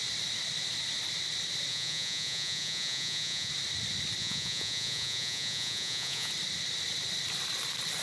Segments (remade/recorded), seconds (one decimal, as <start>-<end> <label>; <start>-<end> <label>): 0.0-1.7 recorded; 1.7-3.5 remade; 3.5-4.2 recorded; 4.2-6.3 remade; 6.3-8.0 recorded